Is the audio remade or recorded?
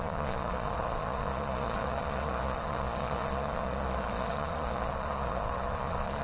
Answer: remade